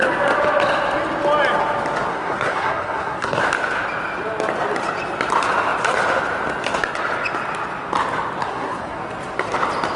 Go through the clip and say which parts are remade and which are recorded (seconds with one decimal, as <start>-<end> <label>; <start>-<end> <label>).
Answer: 0.0-2.1 recorded; 2.1-3.4 remade; 3.4-8.4 recorded; 8.4-9.0 remade; 9.0-10.0 recorded